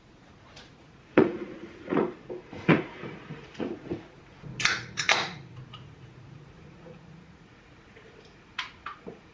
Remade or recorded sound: remade